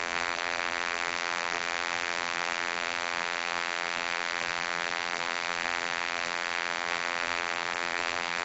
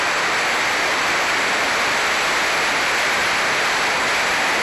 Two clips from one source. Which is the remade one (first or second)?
first